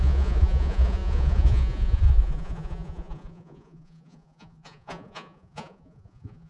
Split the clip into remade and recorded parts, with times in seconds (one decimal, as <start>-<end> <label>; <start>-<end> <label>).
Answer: 0.0-6.5 remade